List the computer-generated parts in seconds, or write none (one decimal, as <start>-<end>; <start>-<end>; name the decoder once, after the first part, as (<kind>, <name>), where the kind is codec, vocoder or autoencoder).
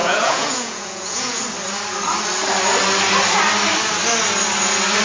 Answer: 0.0-1.4 (vocoder, Vocos)